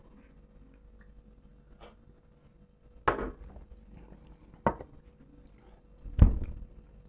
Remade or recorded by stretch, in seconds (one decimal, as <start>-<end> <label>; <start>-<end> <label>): 0.0-7.1 recorded